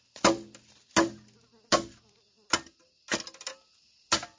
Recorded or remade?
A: recorded